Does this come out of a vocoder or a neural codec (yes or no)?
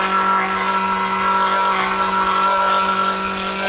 no